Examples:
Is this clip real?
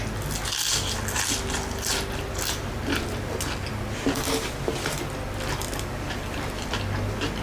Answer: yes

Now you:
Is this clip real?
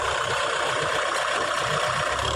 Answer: no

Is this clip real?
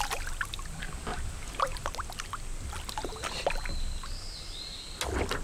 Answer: yes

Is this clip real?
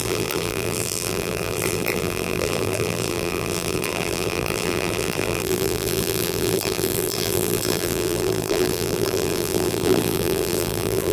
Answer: no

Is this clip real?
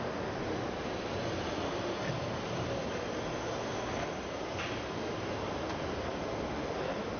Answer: yes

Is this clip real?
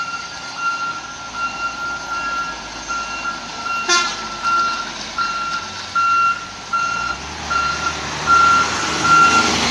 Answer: yes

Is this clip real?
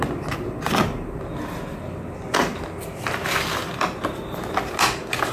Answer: yes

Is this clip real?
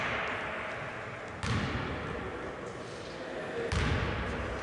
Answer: yes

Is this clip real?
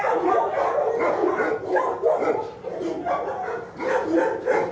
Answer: yes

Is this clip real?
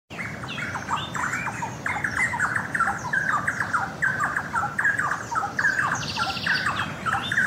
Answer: yes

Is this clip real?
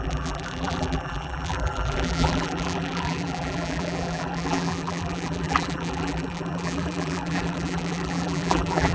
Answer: no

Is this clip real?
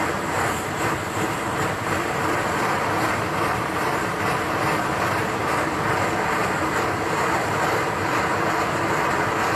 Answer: no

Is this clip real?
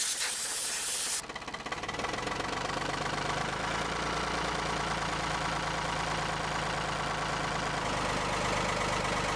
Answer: yes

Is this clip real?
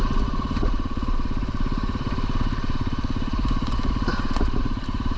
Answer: no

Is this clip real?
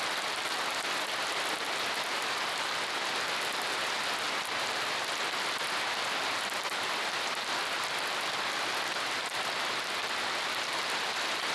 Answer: yes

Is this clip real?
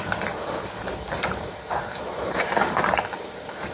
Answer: no